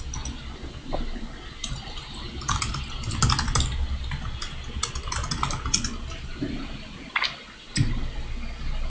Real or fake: real